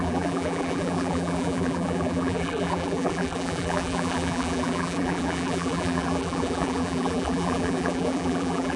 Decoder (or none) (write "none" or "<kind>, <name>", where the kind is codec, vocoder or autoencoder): vocoder, BigVGAN v2